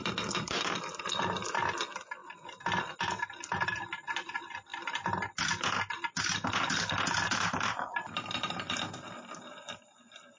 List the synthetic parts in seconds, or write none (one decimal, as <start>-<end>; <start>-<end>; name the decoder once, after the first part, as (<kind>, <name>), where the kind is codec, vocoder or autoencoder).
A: none